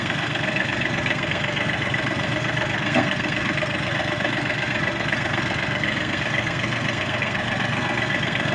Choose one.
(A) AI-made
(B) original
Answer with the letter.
A